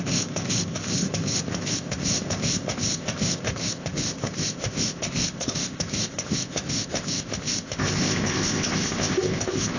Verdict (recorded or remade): remade